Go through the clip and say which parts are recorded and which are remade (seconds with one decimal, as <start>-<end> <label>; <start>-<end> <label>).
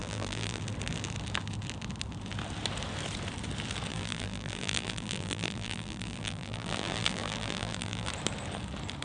0.0-0.6 remade; 0.6-3.9 recorded; 3.9-8.1 remade; 8.1-9.0 recorded